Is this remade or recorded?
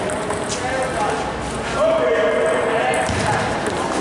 recorded